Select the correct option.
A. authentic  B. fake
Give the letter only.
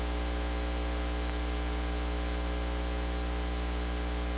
A